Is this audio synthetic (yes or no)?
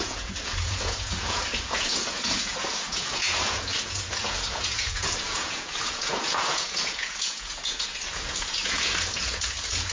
yes